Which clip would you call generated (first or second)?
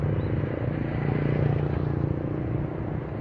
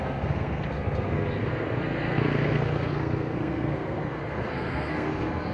second